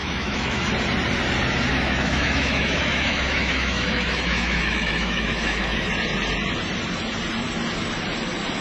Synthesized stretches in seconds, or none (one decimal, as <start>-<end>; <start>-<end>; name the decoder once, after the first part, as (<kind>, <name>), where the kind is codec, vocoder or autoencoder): 0.0-0.7 (autoencoder, DAC-VAE); 1.7-5.9